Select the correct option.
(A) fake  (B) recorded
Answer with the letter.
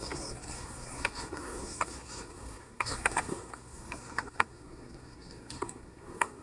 A